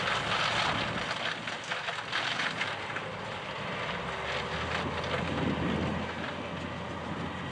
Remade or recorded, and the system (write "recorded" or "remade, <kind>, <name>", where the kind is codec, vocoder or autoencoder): recorded